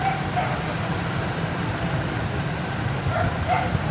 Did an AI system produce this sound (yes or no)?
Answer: yes